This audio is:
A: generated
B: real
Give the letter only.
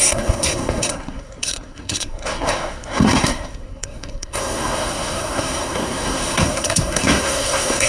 A